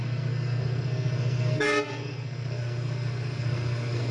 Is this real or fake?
fake